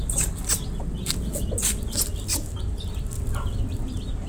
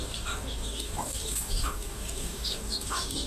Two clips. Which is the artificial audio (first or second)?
second